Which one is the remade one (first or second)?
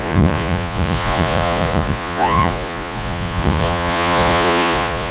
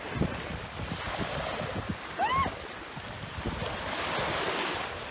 first